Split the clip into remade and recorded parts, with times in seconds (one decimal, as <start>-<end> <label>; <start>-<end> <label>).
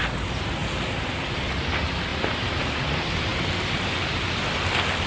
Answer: 0.0-5.1 recorded